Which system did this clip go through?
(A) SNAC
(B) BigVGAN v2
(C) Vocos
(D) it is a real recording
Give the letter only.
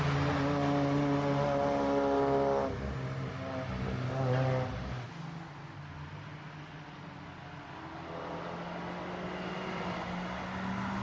D